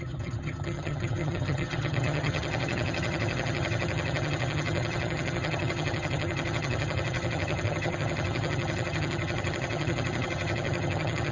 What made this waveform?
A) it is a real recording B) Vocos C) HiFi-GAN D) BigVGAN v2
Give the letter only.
C